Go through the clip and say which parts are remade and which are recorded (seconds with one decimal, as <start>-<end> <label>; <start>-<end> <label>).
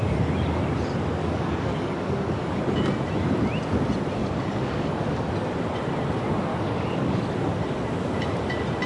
0.0-1.2 recorded; 1.2-2.6 remade; 2.6-4.2 recorded; 4.2-5.3 remade; 5.3-6.5 recorded; 6.5-7.2 remade; 7.2-8.9 recorded